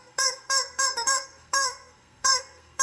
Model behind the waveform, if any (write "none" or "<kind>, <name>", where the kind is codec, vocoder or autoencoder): codec, SNAC